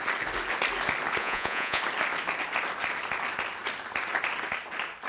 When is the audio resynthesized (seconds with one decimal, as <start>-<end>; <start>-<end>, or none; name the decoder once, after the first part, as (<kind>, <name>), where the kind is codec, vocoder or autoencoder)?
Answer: 1.2-1.8 (vocoder, Vocos)